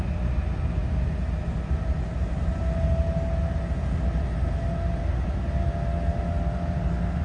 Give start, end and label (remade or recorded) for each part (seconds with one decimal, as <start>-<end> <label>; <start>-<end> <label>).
0.0-7.2 recorded